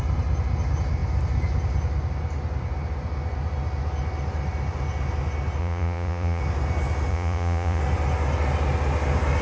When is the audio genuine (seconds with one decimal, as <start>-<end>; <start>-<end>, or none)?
0.0-5.6; 6.4-7.1; 7.8-9.4